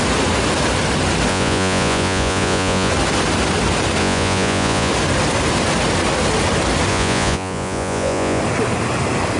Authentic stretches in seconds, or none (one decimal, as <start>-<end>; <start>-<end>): 0.0-1.3; 2.9-4.0; 4.9-6.9; 8.4-9.4